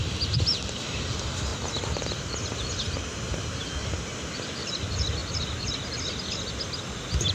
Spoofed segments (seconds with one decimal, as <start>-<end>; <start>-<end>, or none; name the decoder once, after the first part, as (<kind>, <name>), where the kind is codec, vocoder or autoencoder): 3.8-4.4 (vocoder, BigVGAN v2)